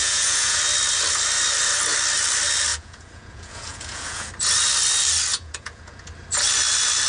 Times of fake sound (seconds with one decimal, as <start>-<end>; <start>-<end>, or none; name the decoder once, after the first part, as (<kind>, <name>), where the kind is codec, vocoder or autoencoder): 0.0-0.6 (vocoder, Vocos); 2.7-4.3; 5.3-6.1